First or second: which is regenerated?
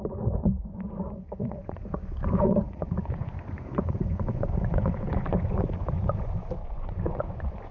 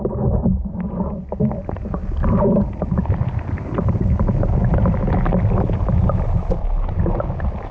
first